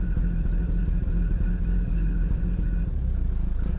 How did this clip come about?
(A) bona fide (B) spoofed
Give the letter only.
B